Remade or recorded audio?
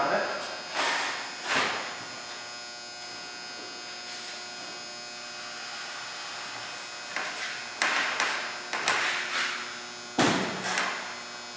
recorded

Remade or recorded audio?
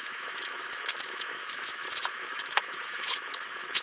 remade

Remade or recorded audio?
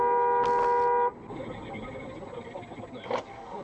recorded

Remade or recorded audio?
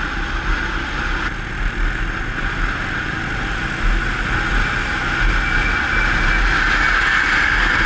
recorded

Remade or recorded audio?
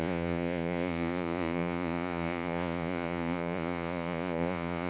remade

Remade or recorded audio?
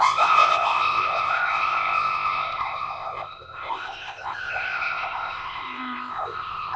remade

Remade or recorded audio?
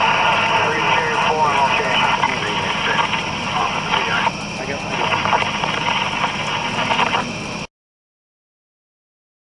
recorded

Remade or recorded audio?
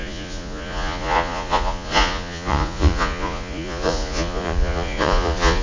remade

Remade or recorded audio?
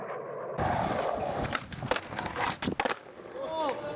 recorded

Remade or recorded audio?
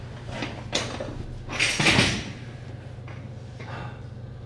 recorded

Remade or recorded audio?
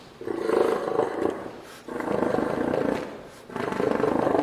recorded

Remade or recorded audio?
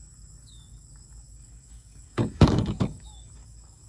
remade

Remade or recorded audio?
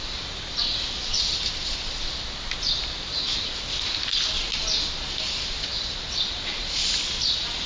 recorded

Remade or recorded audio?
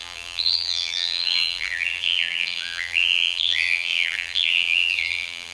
remade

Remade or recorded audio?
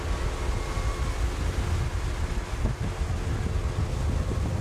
recorded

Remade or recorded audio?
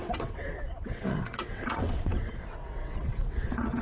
remade